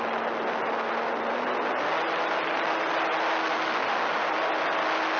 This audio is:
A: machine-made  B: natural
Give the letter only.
B